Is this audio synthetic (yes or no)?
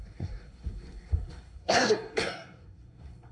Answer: yes